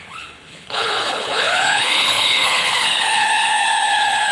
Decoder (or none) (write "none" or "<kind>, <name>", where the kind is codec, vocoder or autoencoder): codec, HILCodec